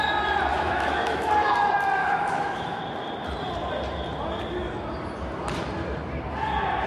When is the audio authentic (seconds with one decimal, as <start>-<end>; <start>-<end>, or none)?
0.0-0.5; 1.3-2.0; 2.8-6.9